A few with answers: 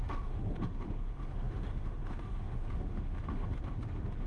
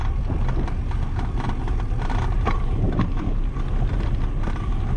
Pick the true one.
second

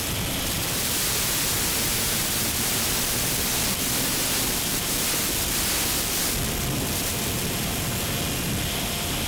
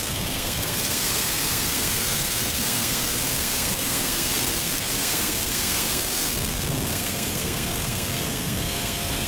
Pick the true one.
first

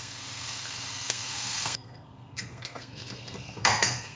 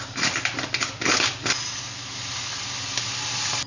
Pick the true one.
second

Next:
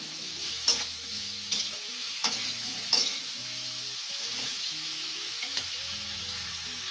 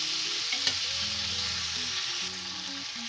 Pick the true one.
second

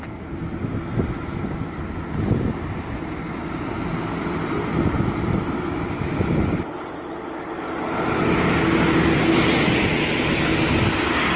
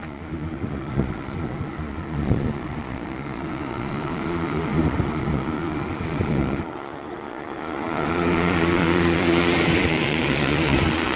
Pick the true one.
first